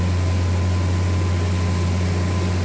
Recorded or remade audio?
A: recorded